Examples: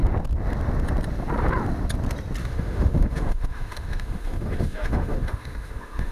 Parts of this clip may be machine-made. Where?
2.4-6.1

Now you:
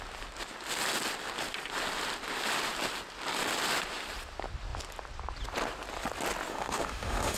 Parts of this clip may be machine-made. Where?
6.5-7.4

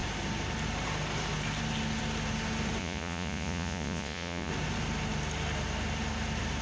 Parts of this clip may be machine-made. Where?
2.8-4.5

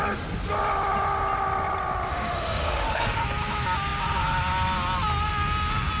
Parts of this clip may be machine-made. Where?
2.1-3.2

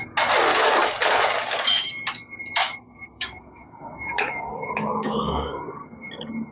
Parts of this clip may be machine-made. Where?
0.5-1.9; 2.6-6.1